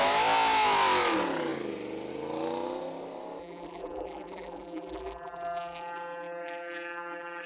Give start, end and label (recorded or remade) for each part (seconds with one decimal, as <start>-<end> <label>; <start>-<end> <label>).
0.0-3.4 recorded; 3.4-7.5 remade